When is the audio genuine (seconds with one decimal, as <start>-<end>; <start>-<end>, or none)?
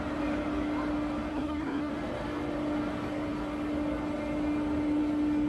0.0-1.3; 1.9-5.5